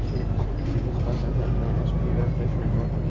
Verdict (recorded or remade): recorded